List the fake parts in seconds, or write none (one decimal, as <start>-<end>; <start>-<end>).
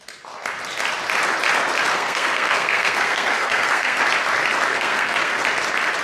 1.9-4.0; 4.7-5.3